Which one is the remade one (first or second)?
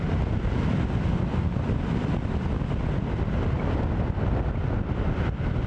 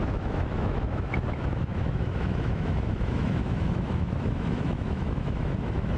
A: second